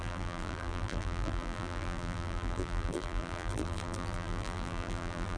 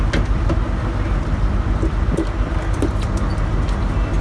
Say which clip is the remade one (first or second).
first